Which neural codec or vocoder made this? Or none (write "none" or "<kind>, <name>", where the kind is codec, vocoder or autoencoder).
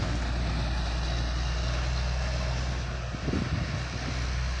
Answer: none